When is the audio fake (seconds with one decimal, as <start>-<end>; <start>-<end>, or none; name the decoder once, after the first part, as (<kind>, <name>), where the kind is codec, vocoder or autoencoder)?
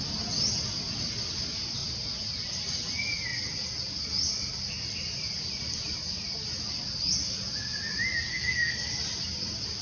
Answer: 8.3-8.9 (codec, SNAC)